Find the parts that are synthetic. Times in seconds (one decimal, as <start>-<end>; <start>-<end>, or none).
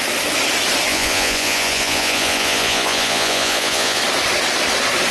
0.9-4.0